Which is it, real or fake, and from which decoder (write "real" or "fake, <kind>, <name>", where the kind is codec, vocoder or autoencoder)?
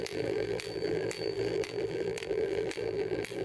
fake, vocoder, BigVGAN v2